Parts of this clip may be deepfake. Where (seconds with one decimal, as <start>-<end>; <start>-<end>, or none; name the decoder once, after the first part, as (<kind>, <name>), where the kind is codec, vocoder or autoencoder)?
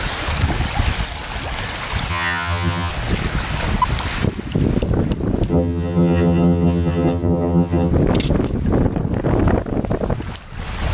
2.1-2.9 (vocoder, HiFi-GAN); 5.5-7.9